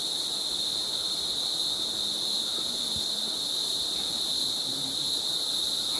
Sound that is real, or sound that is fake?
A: real